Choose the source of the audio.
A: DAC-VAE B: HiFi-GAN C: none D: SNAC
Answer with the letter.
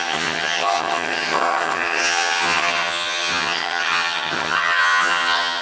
B